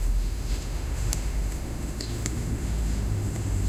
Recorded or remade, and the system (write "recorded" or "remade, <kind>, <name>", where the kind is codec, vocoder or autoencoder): remade, autoencoder, DAC-VAE